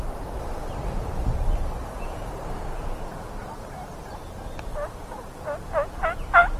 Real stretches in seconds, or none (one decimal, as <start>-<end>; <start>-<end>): 0.0-1.8; 2.4-4.7; 5.4-6.6